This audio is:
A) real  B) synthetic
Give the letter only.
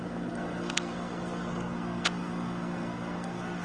B